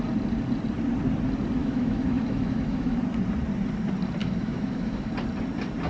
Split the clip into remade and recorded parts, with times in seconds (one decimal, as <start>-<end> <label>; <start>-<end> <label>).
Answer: 0.0-1.6 recorded; 1.6-3.0 remade; 3.0-4.2 recorded; 4.2-5.1 remade; 5.1-5.9 recorded